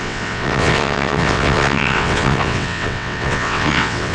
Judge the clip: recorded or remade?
remade